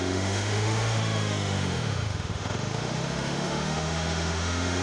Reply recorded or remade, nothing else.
remade